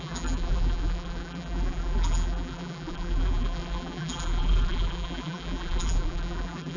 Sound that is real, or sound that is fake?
fake